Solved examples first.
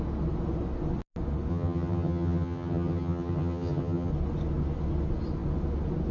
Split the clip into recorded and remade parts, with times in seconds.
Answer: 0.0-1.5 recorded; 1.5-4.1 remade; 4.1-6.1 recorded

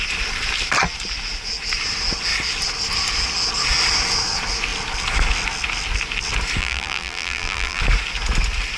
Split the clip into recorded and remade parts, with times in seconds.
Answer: 0.0-6.6 recorded; 6.6-7.8 remade; 7.8-8.8 recorded

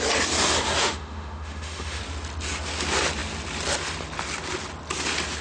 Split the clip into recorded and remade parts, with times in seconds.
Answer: 0.0-0.8 recorded; 0.8-2.0 remade; 2.0-5.4 recorded

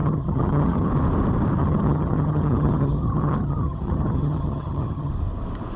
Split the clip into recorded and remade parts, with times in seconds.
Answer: 0.0-0.9 remade; 0.9-1.6 recorded; 1.6-5.1 remade; 5.1-5.8 recorded